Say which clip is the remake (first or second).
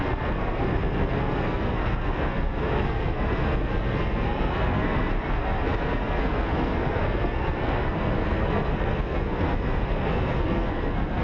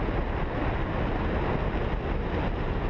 first